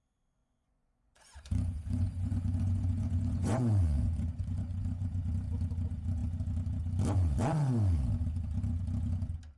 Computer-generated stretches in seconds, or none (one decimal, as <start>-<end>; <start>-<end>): 0.4-5.2